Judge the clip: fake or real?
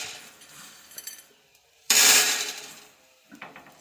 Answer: fake